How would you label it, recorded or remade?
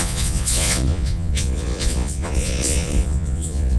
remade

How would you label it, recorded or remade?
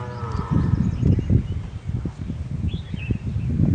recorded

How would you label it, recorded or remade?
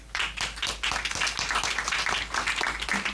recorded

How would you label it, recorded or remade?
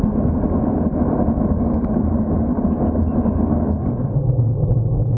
recorded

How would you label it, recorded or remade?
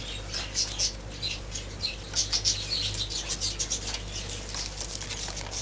recorded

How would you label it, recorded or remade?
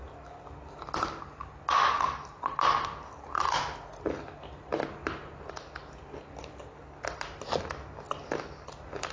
recorded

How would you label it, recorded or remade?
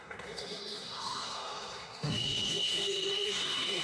remade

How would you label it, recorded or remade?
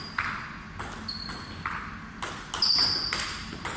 recorded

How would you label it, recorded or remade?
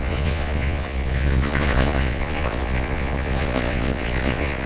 remade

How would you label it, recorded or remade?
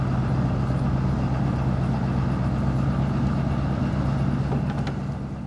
recorded